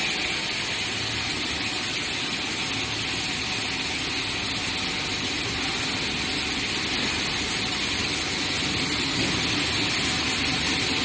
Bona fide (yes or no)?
yes